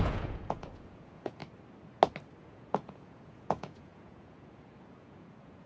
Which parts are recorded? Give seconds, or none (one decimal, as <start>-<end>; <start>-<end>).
1.4-2.4